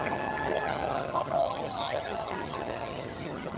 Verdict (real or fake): fake